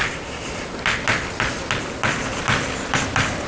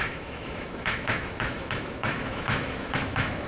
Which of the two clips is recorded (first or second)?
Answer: first